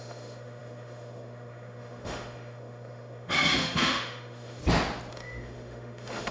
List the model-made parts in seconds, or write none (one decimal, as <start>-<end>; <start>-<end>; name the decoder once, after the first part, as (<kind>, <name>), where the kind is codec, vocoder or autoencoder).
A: 0.0-4.6 (autoencoder, DAC-VAE); 5.1-6.3